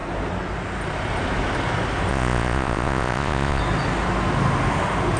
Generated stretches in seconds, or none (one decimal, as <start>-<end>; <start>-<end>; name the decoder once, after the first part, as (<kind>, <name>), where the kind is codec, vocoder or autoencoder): 2.1-3.6 (vocoder, Vocos)